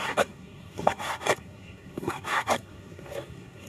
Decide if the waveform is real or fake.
fake